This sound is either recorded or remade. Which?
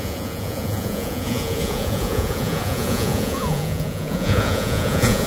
remade